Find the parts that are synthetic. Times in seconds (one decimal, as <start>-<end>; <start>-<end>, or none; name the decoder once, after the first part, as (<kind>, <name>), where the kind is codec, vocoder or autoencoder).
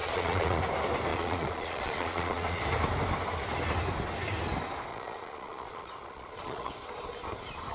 0.0-0.6 (vocoder, Vocos); 1.1-2.6; 4.9-6.7